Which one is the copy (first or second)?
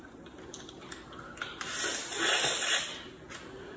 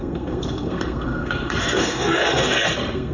second